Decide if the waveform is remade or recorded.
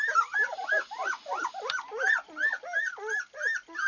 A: recorded